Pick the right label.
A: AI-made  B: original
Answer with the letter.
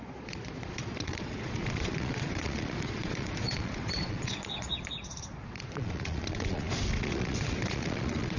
A